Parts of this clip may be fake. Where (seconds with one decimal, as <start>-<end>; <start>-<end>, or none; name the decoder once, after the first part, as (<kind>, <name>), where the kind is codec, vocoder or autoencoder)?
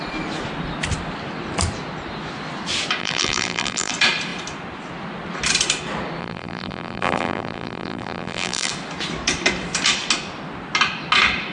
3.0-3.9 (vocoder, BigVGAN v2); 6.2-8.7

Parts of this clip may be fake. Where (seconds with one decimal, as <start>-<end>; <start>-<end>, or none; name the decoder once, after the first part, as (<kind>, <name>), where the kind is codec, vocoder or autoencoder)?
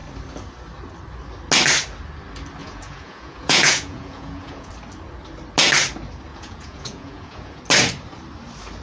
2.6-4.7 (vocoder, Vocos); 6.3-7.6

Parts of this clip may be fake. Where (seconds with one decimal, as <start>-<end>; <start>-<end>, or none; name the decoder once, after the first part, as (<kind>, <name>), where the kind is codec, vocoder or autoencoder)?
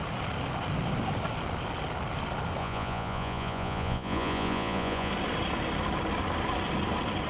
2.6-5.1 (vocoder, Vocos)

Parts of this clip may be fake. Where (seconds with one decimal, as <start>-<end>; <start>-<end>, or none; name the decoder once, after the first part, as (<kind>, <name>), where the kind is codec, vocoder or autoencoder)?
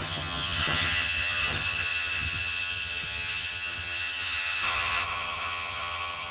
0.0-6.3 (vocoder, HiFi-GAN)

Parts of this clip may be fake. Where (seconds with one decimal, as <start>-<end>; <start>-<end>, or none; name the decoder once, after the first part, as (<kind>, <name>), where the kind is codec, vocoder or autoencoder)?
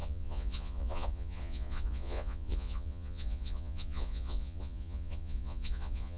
0.0-6.2 (vocoder, Vocos)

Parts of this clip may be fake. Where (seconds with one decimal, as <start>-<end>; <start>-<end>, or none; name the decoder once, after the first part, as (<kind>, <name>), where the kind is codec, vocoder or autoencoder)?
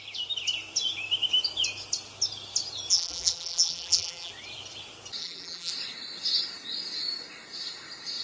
2.9-4.3 (vocoder, BigVGAN v2); 5.2-5.7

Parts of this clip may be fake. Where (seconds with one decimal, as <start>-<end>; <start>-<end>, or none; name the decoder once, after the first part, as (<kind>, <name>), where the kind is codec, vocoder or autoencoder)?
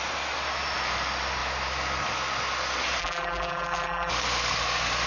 3.0-4.1 (vocoder, BigVGAN v2)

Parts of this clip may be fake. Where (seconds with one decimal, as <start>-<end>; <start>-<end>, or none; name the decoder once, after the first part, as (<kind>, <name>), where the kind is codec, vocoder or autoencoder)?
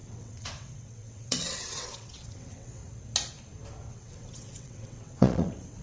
0.0-2.8 (vocoder, WaveNeXt); 3.9-5.8